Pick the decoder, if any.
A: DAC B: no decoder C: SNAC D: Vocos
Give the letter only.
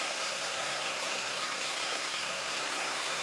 C